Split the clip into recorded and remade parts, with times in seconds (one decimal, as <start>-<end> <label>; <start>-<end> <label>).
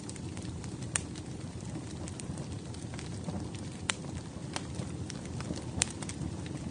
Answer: 0.0-6.7 remade